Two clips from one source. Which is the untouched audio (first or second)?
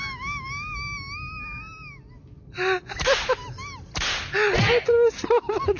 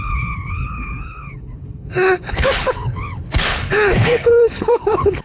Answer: first